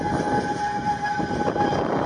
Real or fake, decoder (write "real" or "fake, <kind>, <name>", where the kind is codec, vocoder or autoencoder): real